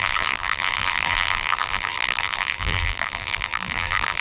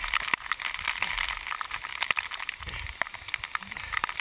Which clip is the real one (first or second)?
second